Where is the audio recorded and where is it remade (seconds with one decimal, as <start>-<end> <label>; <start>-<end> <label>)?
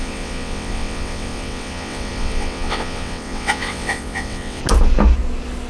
0.0-4.6 remade; 4.6-5.7 recorded